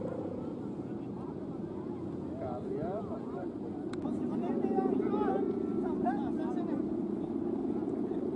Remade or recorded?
recorded